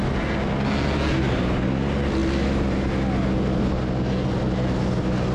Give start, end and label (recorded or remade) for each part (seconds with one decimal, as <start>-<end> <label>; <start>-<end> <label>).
0.0-5.3 recorded